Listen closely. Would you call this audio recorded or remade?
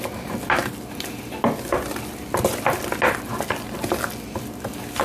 recorded